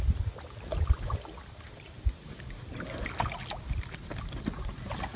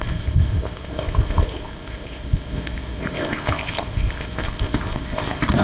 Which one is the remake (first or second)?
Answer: second